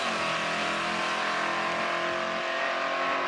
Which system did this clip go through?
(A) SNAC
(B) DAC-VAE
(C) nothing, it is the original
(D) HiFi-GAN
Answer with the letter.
C